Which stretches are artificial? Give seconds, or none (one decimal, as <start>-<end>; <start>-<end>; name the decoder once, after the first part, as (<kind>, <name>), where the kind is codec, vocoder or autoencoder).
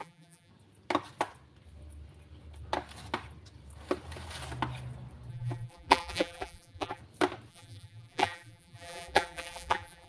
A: 0.0-0.5 (vocoder, BigVGAN v2); 5.3-7.0; 7.5-10.1